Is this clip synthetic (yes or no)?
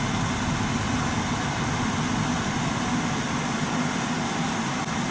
no